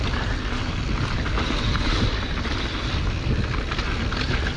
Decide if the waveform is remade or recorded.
recorded